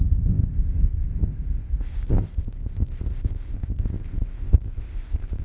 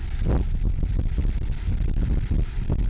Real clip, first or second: second